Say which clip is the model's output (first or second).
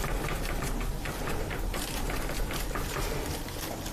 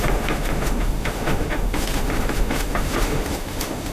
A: second